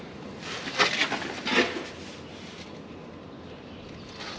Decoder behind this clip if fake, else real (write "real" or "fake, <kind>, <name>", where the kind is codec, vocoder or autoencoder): real